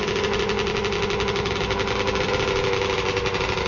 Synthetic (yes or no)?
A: no